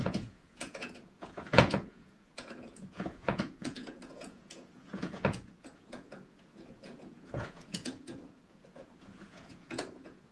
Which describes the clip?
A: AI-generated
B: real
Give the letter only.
A